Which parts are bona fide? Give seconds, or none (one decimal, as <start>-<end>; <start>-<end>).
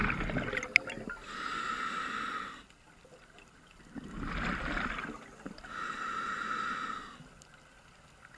0.0-8.4